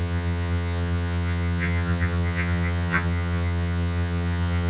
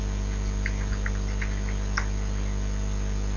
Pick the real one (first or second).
second